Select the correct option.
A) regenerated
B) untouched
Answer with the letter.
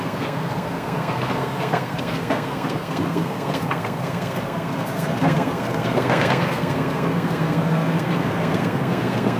A